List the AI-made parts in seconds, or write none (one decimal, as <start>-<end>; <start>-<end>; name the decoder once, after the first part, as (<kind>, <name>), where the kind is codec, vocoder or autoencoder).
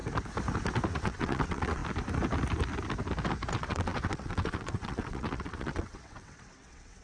0.9-1.8 (vocoder, WaveNeXt); 3.5-7.0